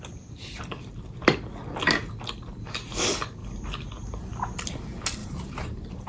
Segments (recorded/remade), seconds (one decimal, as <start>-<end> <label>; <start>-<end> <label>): 0.0-3.4 recorded; 3.4-4.2 remade; 4.2-5.2 recorded; 5.2-6.1 remade